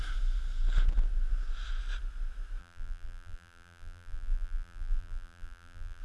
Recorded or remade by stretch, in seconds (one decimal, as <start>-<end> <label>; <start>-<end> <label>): 0.0-2.6 recorded; 2.6-6.0 remade

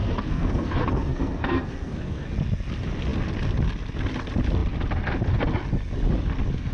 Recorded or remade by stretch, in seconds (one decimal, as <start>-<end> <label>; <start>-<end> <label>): 0.0-2.3 remade; 2.3-6.7 recorded

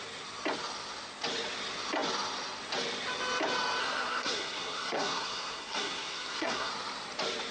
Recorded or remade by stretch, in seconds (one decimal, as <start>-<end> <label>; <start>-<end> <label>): 0.0-3.8 recorded; 3.8-6.7 remade; 6.7-7.5 recorded

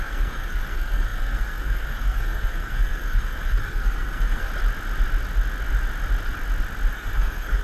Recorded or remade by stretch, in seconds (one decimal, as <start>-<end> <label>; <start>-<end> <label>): 0.0-4.5 remade; 4.5-6.9 recorded; 6.9-7.6 remade